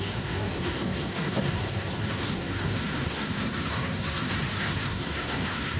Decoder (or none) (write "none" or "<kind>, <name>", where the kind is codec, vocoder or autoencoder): codec, SNAC